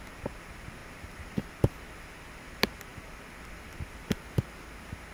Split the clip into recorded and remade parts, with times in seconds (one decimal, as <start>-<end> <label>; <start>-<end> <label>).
0.0-0.8 recorded; 0.8-1.9 remade; 1.9-2.9 recorded; 2.9-4.4 remade; 4.4-5.1 recorded